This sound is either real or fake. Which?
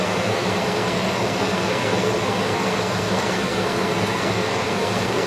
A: fake